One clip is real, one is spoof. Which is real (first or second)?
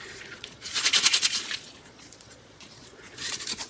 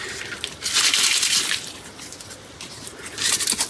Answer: second